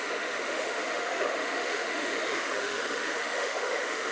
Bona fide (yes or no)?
no